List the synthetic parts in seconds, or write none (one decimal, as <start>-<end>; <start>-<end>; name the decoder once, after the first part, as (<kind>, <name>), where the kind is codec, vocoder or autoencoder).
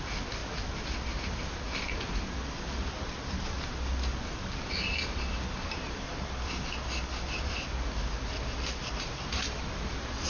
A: none